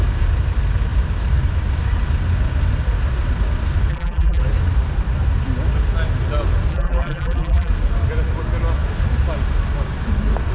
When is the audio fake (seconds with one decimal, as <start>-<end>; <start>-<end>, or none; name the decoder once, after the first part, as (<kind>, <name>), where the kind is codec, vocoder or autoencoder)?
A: 3.9-4.4 (vocoder, BigVGAN v2); 6.7-7.7